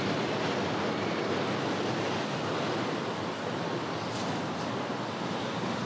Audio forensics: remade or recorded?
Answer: recorded